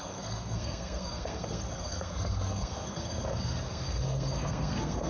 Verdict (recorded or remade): remade